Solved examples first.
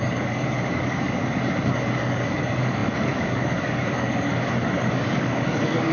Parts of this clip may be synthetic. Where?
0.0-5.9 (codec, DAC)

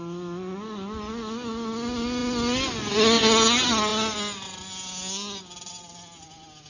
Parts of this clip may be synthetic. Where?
none

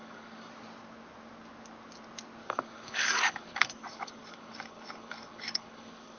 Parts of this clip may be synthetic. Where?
0.0-0.5 (codec, DAC); 2.4-6.2

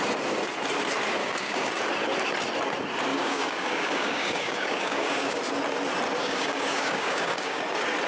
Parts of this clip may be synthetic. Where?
1.2-1.7 (codec, DAC); 3.1-5.4; 6.2-7.6

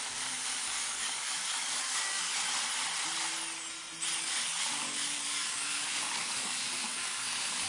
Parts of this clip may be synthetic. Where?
0.0-2.3 (codec, DAC); 4.2-7.7